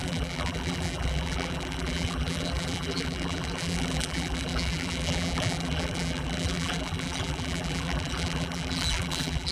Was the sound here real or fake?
fake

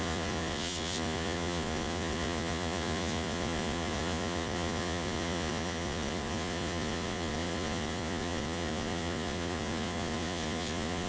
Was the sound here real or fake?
fake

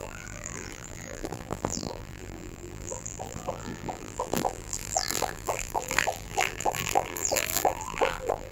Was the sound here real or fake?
fake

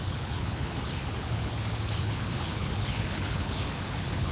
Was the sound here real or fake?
fake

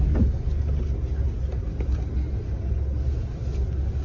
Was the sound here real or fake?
real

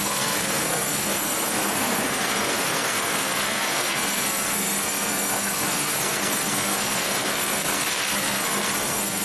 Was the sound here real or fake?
fake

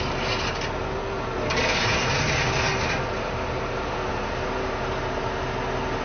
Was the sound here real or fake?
real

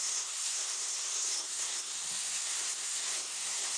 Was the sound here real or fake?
fake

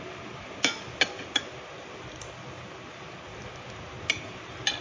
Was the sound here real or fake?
real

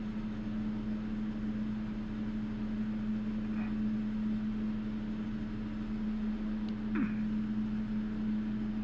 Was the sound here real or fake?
real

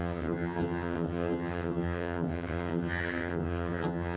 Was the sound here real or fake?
fake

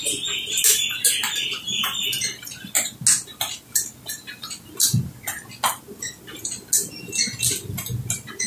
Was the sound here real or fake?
real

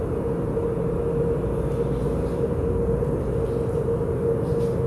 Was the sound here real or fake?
real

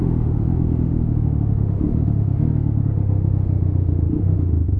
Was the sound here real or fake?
fake